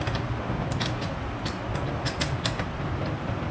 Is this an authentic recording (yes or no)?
yes